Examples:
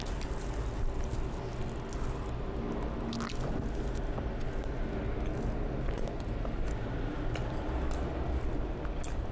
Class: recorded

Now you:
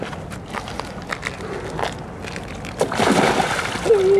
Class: recorded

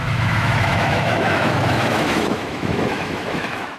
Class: remade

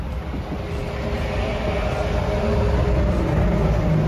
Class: recorded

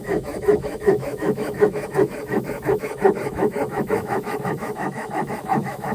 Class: remade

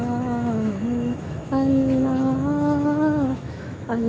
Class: remade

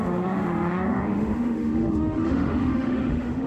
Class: remade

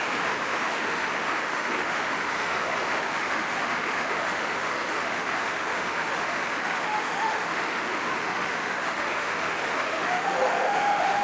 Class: remade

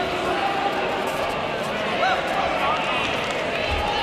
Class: recorded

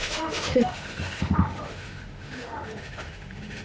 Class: remade